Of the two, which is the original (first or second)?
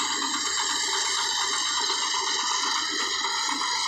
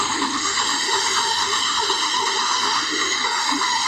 first